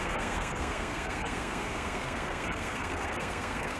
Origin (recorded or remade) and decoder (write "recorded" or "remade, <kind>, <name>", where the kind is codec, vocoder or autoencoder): remade, codec, SNAC